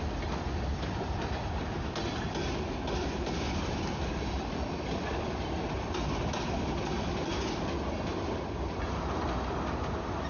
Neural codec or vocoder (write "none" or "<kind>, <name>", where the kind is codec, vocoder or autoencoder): none